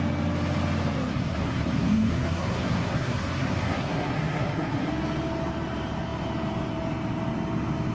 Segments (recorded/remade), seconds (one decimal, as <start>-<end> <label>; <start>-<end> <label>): 0.0-1.1 recorded; 1.1-4.9 remade; 4.9-7.9 recorded